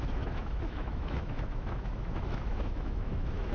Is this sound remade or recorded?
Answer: remade